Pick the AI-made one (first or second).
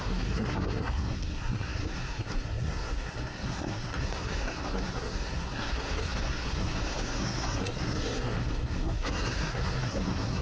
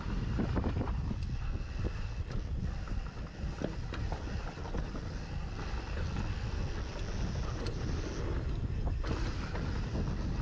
first